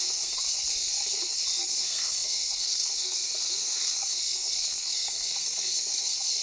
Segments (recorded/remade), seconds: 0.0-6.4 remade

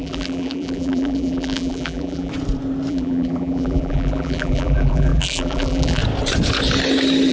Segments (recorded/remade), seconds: 0.0-2.3 remade; 2.3-2.9 recorded; 2.9-6.0 remade; 6.0-7.3 recorded

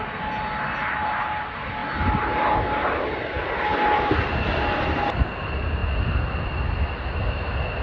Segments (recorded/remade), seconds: 0.0-7.8 recorded

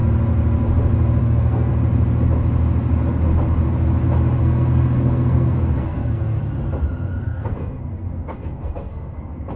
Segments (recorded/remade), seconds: 0.0-1.2 recorded; 1.2-1.7 remade; 1.7-4.4 recorded; 4.4-6.4 remade; 6.4-7.2 recorded; 7.2-9.6 remade

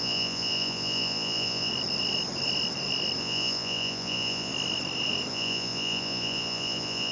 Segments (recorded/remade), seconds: 0.0-1.7 remade; 1.7-3.2 recorded; 3.2-4.5 remade; 4.5-5.3 recorded; 5.3-7.1 remade

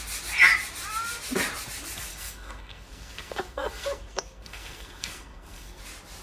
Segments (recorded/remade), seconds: 0.0-2.1 recorded; 2.1-5.8 remade; 5.8-6.2 recorded

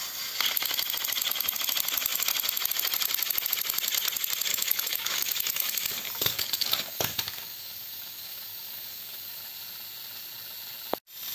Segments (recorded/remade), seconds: 0.0-4.5 recorded; 4.5-9.4 remade; 9.4-11.3 recorded